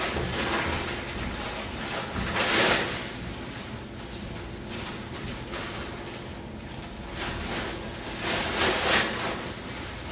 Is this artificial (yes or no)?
no